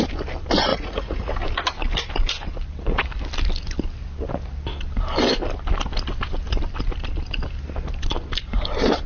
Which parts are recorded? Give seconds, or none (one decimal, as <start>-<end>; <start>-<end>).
0.0-0.7; 1.3-9.1